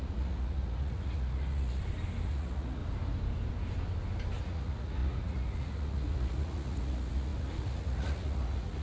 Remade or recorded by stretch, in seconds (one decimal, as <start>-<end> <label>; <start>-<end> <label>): 0.0-1.8 remade; 1.8-2.3 recorded; 2.3-2.8 remade; 2.8-4.4 recorded; 4.4-8.8 remade